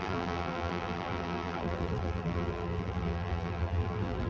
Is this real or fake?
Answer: fake